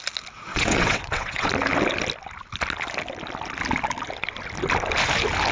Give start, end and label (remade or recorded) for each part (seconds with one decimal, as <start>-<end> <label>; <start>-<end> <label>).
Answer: 0.0-0.5 recorded; 0.5-1.5 remade; 1.5-5.5 recorded